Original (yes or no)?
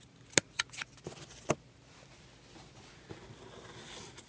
yes